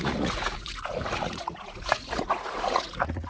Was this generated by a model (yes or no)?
yes